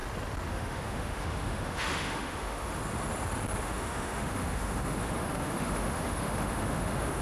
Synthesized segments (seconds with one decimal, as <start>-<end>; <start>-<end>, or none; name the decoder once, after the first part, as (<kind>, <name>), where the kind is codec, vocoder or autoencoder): 0.5-2.8 (autoencoder, DAC-VAE); 3.6-7.2